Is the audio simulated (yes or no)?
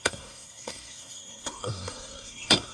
yes